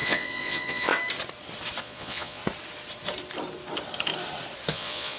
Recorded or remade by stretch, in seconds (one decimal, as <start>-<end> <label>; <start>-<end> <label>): 0.0-0.9 remade; 0.9-1.8 recorded; 1.8-2.4 remade; 2.4-4.7 recorded; 4.7-5.2 remade